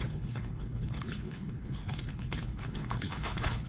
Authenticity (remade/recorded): remade